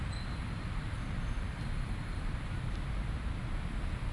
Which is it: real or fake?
fake